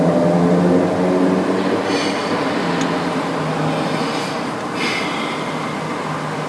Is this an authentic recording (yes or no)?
yes